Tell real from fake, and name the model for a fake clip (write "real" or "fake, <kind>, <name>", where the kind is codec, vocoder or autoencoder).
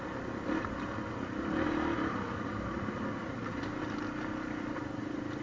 real